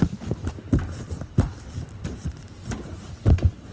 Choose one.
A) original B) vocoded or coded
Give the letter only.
A